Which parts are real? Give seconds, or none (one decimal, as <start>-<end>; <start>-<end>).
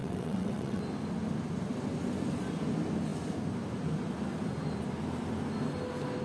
0.8-6.2